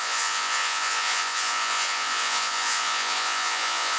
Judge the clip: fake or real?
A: fake